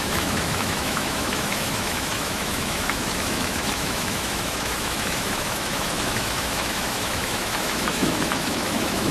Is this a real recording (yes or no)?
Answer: no